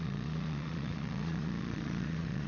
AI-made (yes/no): yes